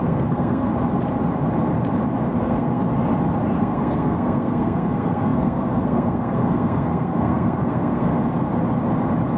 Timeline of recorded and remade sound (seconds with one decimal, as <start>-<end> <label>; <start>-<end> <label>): 0.0-0.7 remade; 0.7-2.4 recorded; 2.4-2.8 remade; 2.8-3.6 recorded; 3.6-8.1 remade; 8.1-9.4 recorded